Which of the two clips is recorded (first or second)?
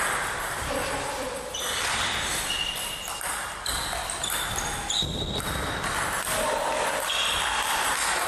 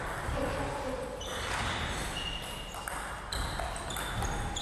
second